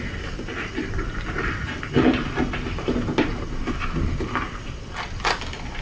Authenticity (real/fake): real